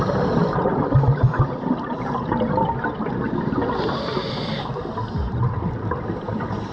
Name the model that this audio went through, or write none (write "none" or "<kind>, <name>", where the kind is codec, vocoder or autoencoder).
vocoder, BigVGAN v2